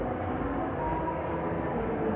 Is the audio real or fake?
real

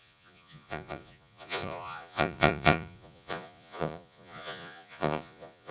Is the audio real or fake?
fake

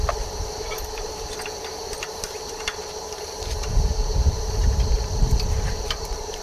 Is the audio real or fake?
fake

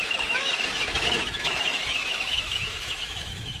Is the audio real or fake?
fake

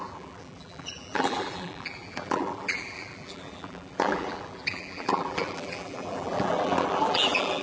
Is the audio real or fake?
fake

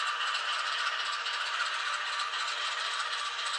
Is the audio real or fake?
real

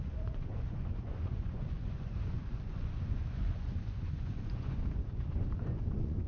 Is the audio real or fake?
fake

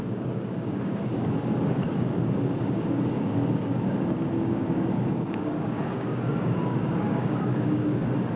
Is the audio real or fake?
fake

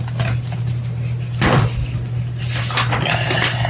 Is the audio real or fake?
real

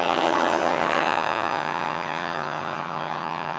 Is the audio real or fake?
fake